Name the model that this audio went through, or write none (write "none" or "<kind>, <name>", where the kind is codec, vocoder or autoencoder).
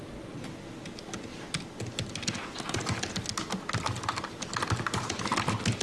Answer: none